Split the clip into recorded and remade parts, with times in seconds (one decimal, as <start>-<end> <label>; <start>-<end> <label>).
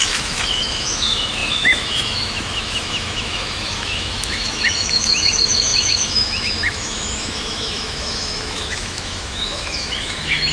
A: 0.0-10.5 remade